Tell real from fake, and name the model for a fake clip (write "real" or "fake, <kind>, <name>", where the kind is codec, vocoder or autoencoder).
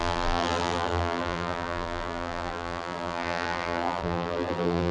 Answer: fake, vocoder, BigVGAN v2